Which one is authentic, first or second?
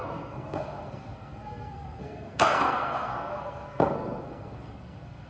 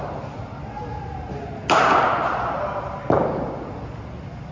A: second